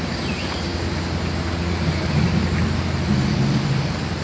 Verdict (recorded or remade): recorded